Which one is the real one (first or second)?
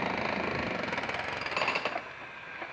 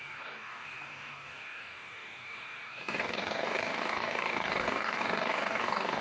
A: first